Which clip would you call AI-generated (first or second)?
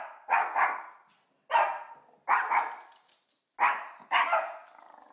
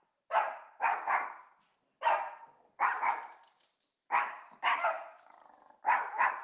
second